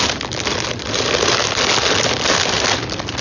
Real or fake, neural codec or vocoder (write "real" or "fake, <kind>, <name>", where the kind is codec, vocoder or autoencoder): real